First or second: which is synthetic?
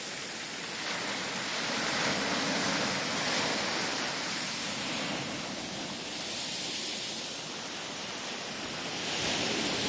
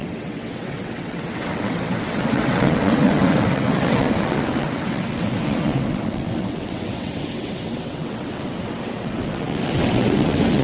second